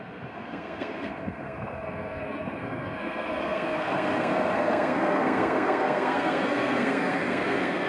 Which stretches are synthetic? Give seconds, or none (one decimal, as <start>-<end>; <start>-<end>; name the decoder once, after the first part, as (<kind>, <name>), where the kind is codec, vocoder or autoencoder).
0.0-7.9 (codec, SNAC)